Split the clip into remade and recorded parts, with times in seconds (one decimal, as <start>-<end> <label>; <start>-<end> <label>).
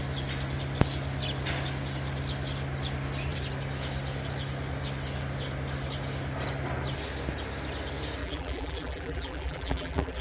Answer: 0.0-8.2 recorded; 8.2-10.2 remade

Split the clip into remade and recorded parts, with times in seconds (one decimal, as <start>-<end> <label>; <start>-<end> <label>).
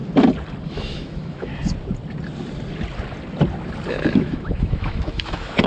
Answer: 0.0-0.7 recorded; 0.7-1.5 remade; 1.5-3.9 recorded; 3.9-5.7 remade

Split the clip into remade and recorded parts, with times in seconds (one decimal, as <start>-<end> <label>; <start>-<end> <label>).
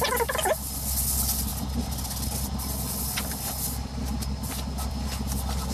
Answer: 0.0-5.7 recorded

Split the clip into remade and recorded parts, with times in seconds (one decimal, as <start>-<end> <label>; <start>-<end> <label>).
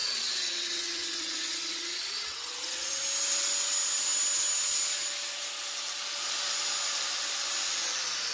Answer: 0.0-2.9 remade; 2.9-8.3 recorded